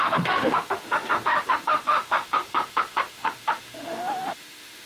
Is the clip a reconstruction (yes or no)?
yes